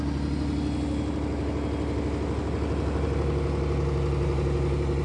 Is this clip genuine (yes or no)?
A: yes